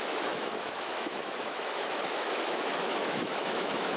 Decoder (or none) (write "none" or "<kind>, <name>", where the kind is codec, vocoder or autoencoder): autoencoder, DAC-VAE